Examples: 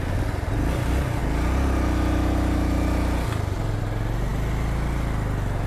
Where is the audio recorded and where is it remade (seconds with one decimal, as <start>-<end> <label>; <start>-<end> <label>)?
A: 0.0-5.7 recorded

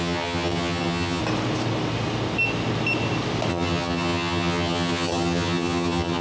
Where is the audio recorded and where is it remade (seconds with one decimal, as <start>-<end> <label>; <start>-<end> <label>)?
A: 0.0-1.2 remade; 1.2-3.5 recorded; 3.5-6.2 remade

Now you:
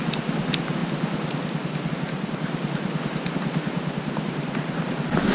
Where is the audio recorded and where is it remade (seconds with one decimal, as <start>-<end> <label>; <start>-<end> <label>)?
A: 0.0-0.8 recorded; 0.8-1.9 remade; 1.9-5.3 recorded

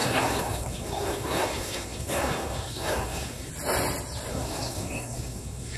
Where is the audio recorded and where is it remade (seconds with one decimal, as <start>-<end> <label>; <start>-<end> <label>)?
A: 0.0-3.5 remade; 3.5-4.3 recorded; 4.3-5.8 remade

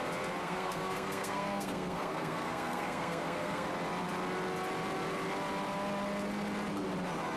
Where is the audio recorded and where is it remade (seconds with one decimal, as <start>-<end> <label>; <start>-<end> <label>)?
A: 0.0-0.4 recorded; 0.4-3.7 remade; 3.7-7.4 recorded

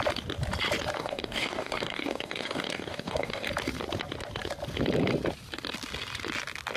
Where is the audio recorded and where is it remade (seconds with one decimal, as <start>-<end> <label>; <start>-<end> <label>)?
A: 0.0-1.0 recorded; 1.0-3.5 remade; 3.5-6.8 recorded

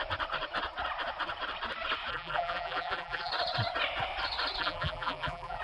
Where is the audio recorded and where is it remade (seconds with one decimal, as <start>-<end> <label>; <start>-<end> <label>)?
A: 0.0-2.1 recorded; 2.1-3.3 remade; 3.3-4.6 recorded; 4.6-5.6 remade